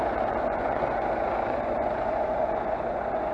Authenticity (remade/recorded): remade